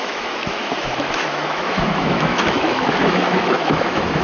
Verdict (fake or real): fake